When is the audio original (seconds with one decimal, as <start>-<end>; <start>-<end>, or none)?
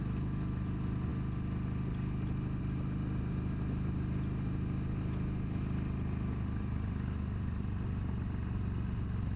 0.0-9.4